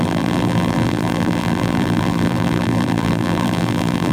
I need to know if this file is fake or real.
fake